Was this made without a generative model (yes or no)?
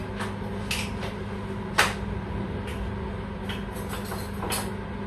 yes